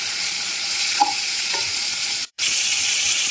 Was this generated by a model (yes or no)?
yes